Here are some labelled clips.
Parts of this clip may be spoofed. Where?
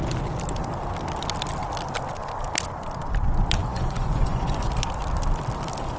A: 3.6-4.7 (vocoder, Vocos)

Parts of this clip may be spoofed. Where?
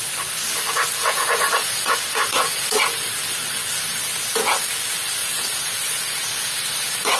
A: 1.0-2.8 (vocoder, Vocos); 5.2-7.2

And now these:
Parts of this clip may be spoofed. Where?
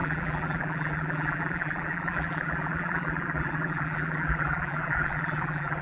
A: 0.0-5.8 (vocoder, BigVGAN v2)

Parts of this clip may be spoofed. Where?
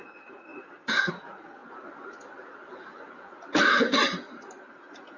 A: 0.0-1.6 (vocoder, Vocos); 4.7-5.2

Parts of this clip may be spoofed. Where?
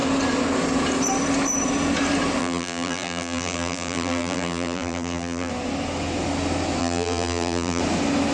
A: 2.4-5.5 (vocoder, BigVGAN v2); 6.8-7.8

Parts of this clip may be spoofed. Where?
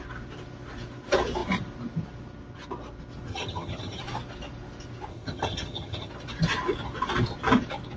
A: 3.3-4.0 (vocoder, HiFi-GAN); 5.1-6.1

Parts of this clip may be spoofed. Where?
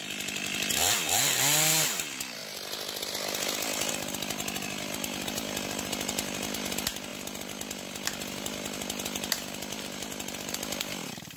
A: none